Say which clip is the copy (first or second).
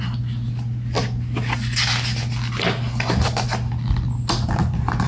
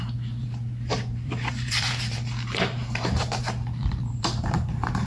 second